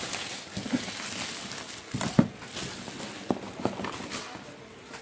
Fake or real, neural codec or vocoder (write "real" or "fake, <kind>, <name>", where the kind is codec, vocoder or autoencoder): real